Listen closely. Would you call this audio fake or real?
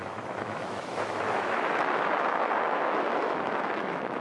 fake